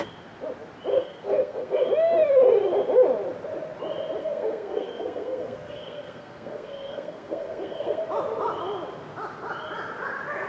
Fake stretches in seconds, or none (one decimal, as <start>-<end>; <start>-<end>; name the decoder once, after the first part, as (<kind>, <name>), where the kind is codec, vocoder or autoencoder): 0.9-1.9 (codec, SNAC); 4.2-8.0